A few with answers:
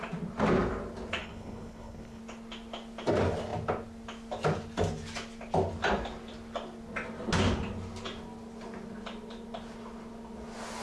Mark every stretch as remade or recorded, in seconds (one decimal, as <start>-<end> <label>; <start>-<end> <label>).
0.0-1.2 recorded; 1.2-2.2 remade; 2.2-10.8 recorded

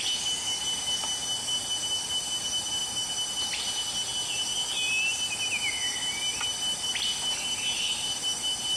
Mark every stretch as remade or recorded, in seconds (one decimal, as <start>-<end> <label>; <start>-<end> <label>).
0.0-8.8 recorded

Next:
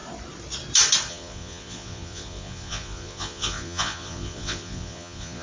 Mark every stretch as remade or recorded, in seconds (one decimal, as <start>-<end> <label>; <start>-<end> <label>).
0.0-1.1 recorded; 1.1-5.4 remade

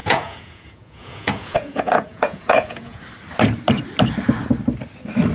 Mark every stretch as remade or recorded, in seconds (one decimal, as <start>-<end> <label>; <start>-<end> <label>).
0.0-3.0 remade; 3.0-5.3 recorded

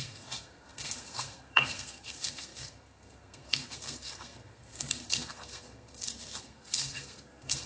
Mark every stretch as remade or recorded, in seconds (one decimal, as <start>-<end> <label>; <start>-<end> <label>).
0.0-7.7 remade

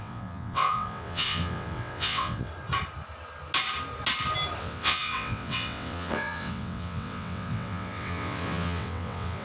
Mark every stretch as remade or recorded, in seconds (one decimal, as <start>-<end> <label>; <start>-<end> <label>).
0.0-2.5 remade; 2.5-4.6 recorded; 4.6-9.4 remade

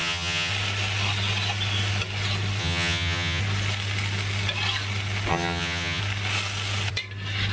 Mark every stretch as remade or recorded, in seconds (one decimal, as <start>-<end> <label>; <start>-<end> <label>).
0.0-0.5 remade; 0.5-2.6 recorded; 2.6-3.4 remade; 3.4-5.3 recorded; 5.3-6.0 remade; 6.0-7.5 recorded